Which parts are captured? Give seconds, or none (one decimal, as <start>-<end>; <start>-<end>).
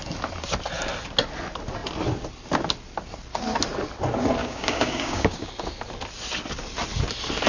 0.0-4.4; 5.5-7.5